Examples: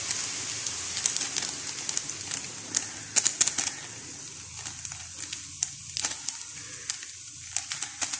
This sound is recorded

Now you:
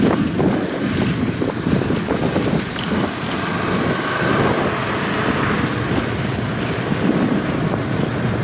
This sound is recorded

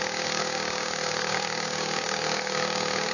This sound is remade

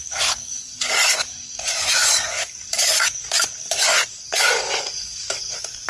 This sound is remade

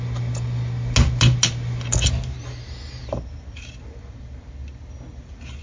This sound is recorded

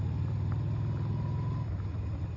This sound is recorded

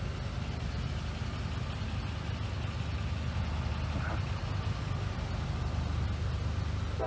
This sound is recorded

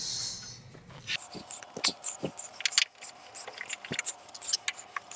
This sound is recorded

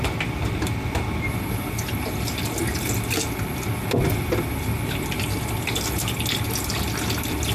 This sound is recorded